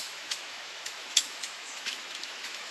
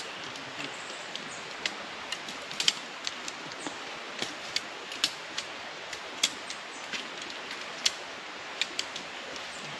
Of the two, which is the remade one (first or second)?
first